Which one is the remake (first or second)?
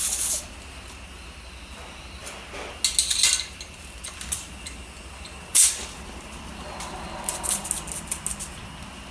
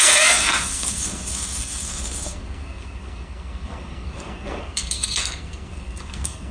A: second